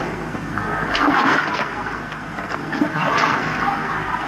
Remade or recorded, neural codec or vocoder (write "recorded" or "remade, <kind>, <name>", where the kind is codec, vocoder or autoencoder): remade, codec, SNAC